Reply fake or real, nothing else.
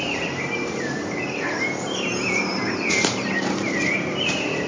fake